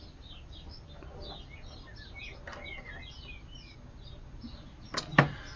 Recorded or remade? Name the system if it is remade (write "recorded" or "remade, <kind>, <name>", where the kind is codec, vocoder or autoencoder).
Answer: recorded